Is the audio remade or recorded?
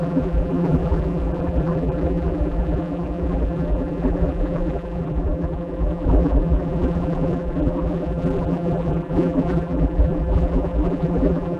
remade